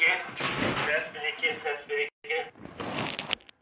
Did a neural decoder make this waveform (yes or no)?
no